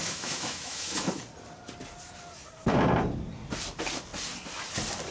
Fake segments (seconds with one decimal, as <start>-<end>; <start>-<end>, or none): 0.0-1.2